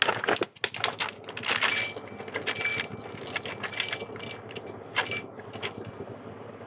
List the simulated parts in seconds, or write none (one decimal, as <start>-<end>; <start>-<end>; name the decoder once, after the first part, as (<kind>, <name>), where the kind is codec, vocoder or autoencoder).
none